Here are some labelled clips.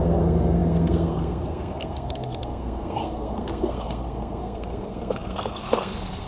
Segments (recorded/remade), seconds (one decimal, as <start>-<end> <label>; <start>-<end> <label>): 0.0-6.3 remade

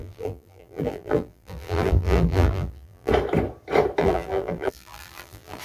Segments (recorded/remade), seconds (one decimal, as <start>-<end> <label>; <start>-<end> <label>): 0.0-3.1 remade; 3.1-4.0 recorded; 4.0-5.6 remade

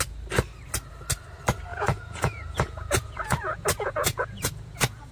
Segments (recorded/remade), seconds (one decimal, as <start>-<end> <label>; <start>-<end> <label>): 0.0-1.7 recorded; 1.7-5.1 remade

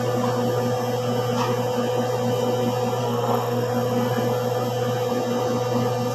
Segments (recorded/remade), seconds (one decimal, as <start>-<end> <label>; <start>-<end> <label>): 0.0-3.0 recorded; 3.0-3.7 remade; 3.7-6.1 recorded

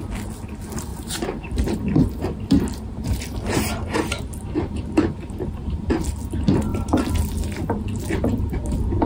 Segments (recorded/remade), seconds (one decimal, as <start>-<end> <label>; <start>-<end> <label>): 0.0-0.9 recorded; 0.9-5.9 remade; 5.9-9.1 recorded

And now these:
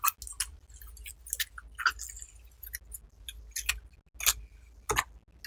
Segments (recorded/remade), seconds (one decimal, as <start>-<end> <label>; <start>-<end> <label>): 0.0-5.5 recorded